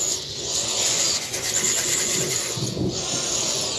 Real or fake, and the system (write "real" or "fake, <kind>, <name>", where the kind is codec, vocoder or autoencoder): fake, vocoder, Vocos